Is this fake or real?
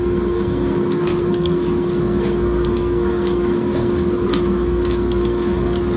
fake